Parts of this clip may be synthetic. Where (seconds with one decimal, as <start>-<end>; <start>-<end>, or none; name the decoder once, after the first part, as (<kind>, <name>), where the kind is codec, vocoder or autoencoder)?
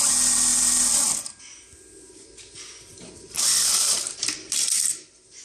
2.9-5.4 (vocoder, BigVGAN v2)